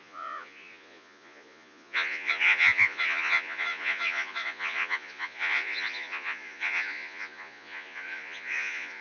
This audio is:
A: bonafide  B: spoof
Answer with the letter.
B